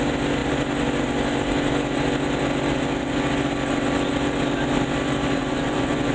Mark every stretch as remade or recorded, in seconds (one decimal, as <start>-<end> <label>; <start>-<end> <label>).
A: 0.0-5.4 recorded; 5.4-6.1 remade